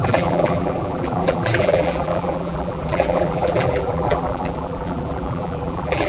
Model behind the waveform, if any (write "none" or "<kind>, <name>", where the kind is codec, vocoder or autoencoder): vocoder, BigVGAN v2